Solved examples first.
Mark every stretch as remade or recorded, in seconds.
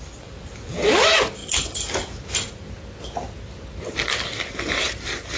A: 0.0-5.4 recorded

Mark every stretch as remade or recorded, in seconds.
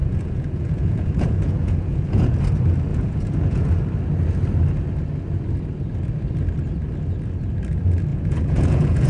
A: 0.0-2.4 remade; 2.4-2.9 recorded; 2.9-3.7 remade; 3.7-8.1 recorded; 8.1-9.1 remade